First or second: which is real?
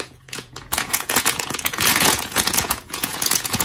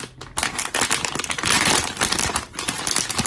second